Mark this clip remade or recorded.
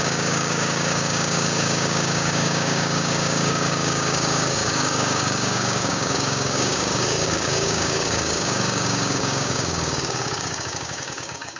remade